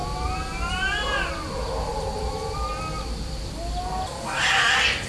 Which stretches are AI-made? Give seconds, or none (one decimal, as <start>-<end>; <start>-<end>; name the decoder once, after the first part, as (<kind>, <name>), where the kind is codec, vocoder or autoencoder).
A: none